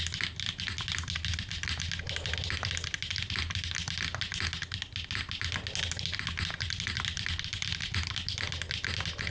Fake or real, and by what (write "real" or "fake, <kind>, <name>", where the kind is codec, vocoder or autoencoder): real